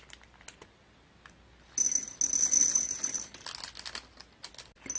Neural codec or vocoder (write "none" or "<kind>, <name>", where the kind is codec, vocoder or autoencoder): none